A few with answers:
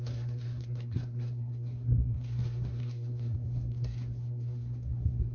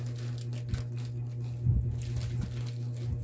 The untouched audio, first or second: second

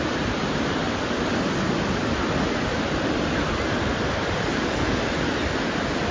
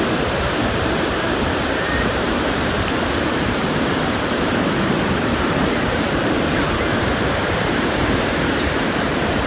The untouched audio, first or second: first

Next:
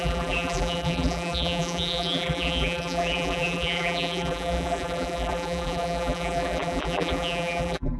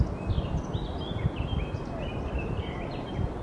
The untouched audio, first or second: second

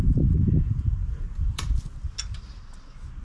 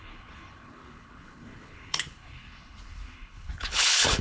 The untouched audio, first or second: first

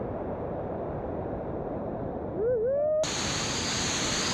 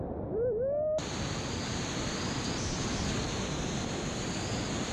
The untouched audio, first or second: first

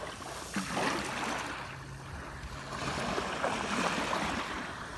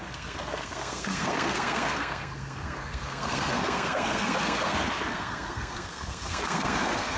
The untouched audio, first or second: first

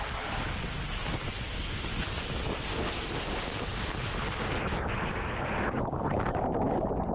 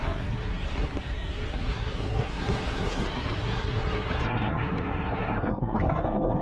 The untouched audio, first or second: first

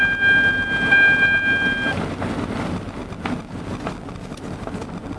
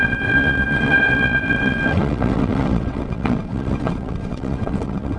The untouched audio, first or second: first